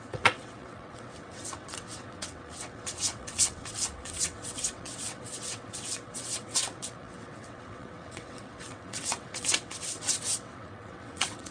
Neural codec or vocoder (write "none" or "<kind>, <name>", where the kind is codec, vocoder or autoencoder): vocoder, WaveNeXt